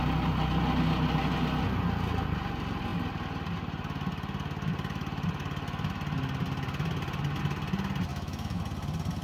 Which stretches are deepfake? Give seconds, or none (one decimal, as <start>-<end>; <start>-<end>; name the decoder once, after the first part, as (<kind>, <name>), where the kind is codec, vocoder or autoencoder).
8.1-8.6 (autoencoder, DAC-VAE)

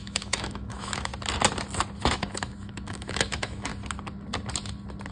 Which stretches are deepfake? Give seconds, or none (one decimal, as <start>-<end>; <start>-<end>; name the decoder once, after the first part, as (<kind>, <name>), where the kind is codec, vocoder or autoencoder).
0.0-1.1 (autoencoder, DAC-VAE); 2.0-3.7

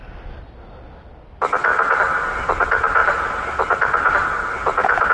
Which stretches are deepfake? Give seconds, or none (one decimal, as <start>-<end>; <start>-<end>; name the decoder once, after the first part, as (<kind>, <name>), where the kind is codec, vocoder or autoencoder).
none

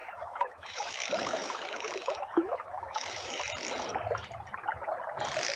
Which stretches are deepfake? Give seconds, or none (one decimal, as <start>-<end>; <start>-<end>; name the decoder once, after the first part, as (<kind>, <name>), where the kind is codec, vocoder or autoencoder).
0.0-3.4 (autoencoder, DAC-VAE)

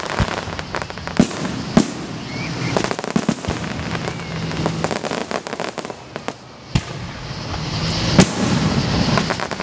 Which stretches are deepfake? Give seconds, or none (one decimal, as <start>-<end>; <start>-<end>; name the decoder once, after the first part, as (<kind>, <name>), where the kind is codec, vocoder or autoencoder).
none

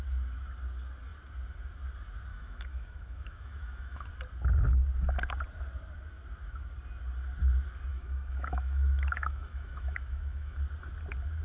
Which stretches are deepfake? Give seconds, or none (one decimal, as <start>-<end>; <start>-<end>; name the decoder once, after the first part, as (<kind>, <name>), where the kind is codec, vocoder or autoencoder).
2.3-4.1 (autoencoder, DAC-VAE); 7.9-10.6